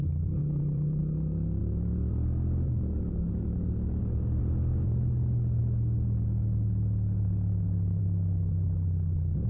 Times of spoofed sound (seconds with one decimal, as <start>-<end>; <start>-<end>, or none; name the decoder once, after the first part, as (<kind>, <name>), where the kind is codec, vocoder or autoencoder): 0.4-1.0 (vocoder, BigVGAN v2)